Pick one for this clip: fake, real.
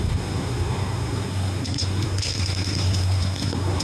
fake